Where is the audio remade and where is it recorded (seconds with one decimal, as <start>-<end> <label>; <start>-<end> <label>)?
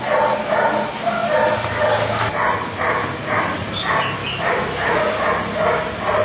0.0-4.2 recorded; 4.2-5.0 remade; 5.0-6.2 recorded